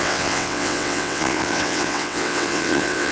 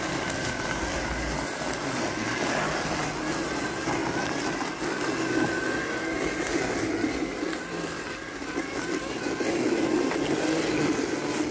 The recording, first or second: second